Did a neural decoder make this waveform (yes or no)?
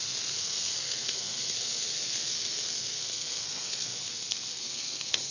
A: yes